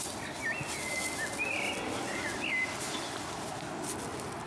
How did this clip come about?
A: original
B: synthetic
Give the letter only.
A